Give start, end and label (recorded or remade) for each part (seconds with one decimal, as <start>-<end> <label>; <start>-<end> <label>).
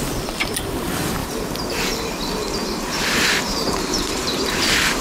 0.0-1.2 recorded; 1.2-1.8 remade; 1.8-2.6 recorded; 2.6-5.0 remade